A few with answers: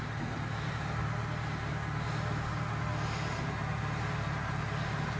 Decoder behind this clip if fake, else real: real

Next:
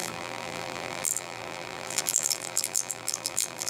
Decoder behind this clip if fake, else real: fake, vocoder, BigVGAN v2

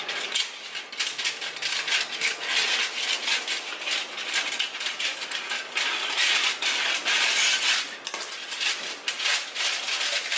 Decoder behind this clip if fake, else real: real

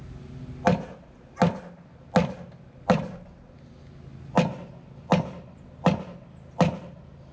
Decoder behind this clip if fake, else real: real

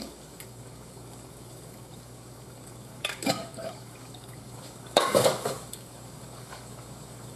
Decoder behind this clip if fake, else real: fake, codec, DAC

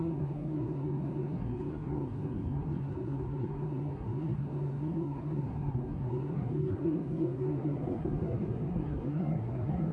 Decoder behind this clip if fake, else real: fake, codec, SNAC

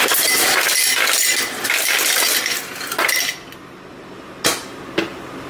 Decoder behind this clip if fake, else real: real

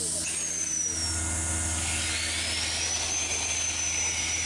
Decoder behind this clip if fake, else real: real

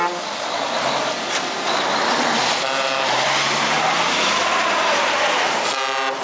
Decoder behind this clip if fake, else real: real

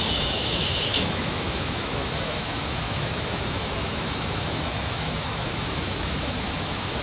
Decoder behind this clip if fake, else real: fake, autoencoder, DAC-VAE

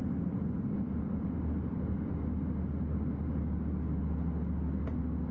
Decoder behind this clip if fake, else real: real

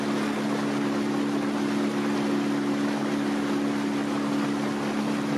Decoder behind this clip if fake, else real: real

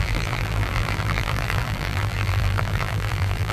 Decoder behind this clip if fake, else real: fake, vocoder, BigVGAN v2